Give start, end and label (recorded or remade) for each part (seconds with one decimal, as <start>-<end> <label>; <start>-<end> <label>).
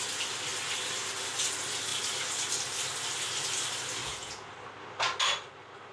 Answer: 0.0-4.0 recorded; 4.0-4.5 remade; 4.5-5.9 recorded